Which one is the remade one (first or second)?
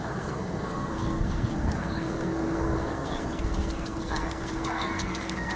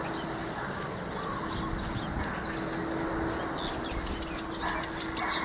first